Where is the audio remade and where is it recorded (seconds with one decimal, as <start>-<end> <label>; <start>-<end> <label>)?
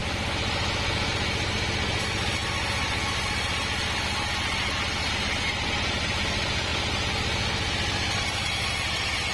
0.0-9.3 recorded